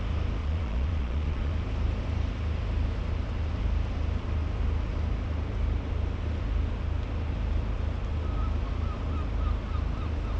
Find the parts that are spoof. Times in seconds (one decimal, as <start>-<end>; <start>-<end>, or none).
0.4-1.5